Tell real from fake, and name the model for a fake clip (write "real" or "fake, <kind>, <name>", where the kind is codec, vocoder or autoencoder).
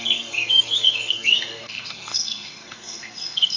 fake, codec, SNAC